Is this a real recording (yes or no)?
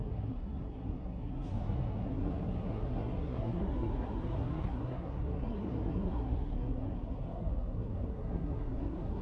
no